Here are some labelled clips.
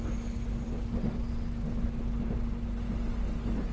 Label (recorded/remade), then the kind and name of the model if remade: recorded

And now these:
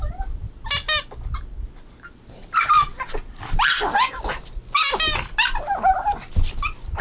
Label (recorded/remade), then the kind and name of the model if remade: recorded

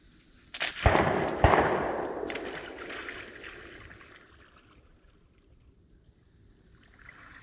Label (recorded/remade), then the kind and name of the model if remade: recorded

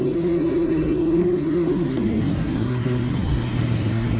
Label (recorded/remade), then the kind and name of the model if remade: remade, codec, SNAC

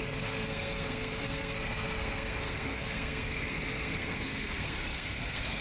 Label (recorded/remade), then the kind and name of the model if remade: remade, codec, SNAC